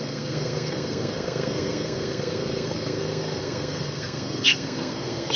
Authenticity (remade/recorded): remade